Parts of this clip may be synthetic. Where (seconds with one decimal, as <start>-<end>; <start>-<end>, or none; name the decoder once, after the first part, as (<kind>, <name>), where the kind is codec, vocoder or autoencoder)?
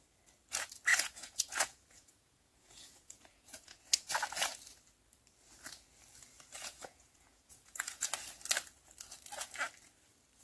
0.9-4.1 (vocoder, Vocos); 6.6-8.1